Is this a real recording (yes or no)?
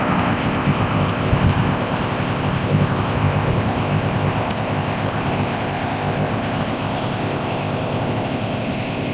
no